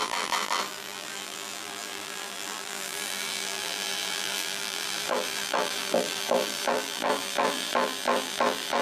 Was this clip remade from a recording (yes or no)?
yes